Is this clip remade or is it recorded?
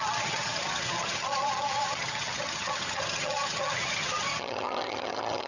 remade